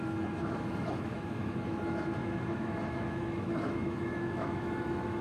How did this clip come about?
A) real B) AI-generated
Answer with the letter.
B